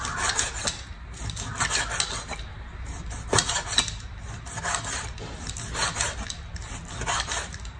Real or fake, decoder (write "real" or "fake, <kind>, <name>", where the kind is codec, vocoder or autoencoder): real